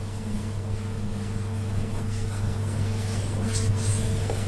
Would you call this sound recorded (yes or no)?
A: no